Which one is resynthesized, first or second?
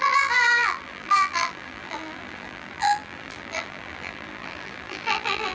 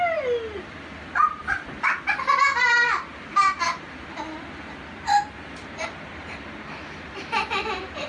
first